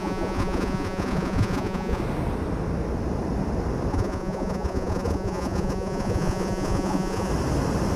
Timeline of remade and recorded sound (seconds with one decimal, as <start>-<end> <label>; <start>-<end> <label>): 0.0-2.0 remade; 2.0-3.9 recorded; 3.9-7.3 remade; 7.3-8.0 recorded